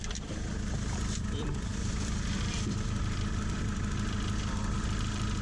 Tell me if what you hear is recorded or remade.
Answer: remade